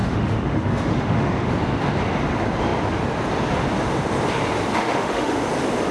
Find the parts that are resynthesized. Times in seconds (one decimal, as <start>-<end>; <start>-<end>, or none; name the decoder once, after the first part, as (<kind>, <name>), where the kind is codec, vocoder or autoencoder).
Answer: 0.0-1.5 (autoencoder, DAC-VAE); 4.7-5.4